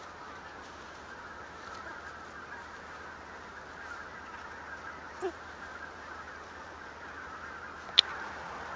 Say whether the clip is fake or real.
real